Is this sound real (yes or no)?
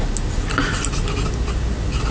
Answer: yes